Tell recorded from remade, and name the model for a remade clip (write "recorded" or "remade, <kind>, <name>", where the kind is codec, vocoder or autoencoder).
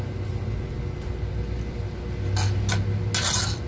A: recorded